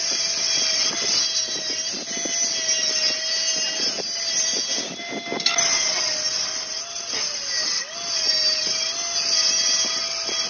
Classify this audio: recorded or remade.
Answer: recorded